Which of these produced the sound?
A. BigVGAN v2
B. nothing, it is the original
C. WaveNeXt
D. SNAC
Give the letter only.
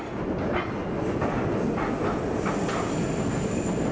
B